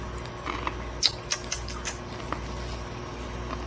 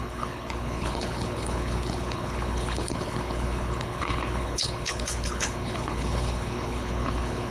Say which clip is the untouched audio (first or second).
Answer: first